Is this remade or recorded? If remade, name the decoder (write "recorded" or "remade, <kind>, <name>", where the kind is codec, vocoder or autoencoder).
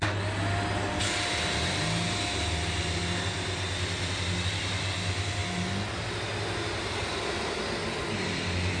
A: recorded